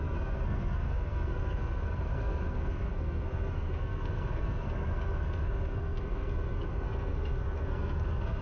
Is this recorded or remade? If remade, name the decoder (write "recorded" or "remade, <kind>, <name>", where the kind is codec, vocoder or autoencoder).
remade, codec, SNAC